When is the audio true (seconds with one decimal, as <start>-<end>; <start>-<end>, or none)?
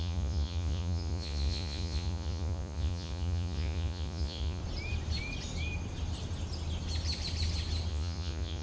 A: 4.6-7.9